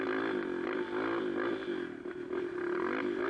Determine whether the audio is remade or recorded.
recorded